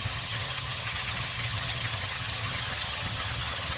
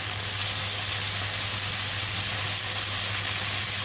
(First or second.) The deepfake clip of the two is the first